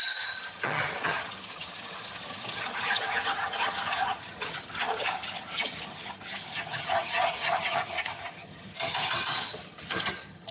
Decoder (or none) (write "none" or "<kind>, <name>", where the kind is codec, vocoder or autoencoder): vocoder, HiFi-GAN